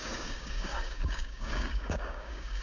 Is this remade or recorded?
remade